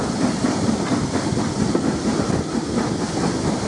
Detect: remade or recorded remade